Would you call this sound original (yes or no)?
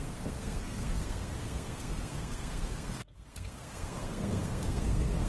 no